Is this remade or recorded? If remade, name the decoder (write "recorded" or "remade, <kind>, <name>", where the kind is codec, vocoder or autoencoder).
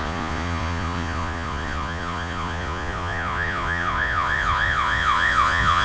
remade, vocoder, Vocos